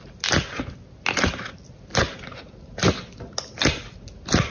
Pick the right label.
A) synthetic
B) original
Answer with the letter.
B